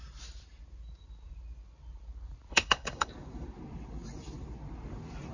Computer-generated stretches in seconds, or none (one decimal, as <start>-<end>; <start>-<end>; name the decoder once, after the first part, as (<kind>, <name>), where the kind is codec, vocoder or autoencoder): 2.5-3.1 (codec, HILCodec)